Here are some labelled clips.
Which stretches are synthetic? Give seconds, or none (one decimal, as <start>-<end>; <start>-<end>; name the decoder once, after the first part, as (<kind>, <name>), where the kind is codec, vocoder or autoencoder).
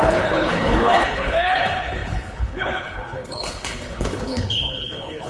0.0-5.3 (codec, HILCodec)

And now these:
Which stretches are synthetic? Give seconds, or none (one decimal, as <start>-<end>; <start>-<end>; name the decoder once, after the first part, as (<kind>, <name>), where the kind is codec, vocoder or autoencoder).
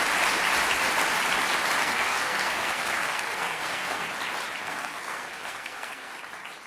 1.8-4.1 (codec, SNAC); 4.6-6.1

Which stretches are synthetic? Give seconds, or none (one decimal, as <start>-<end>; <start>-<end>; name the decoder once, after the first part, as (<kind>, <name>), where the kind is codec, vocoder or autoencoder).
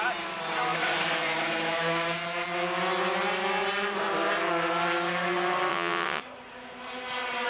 5.7-6.2 (vocoder, WaveNeXt)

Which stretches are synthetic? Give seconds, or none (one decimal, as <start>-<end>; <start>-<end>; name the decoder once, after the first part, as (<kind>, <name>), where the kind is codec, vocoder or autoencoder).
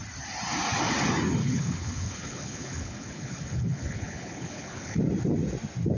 1.4-5.0 (codec, HILCodec)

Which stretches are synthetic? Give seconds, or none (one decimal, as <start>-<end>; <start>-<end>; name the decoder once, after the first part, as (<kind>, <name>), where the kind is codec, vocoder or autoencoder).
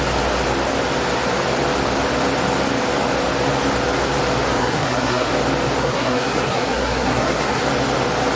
4.6-5.3 (codec, SNAC); 5.8-7.6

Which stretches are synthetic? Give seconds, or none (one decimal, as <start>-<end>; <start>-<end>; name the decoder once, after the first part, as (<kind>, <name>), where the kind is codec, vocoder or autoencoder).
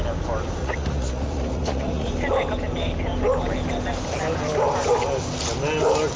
0.6-2.1 (vocoder, Vocos)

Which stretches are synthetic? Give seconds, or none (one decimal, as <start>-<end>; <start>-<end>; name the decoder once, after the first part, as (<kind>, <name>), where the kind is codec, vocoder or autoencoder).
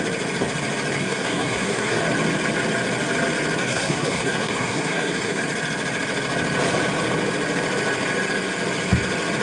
1.0-2.0 (codec, SNAC); 3.6-5.4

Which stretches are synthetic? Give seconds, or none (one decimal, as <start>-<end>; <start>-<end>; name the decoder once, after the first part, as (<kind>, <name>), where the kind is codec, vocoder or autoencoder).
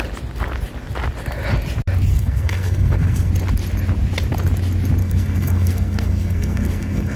2.1-3.3 (codec, SNAC); 5.0-7.2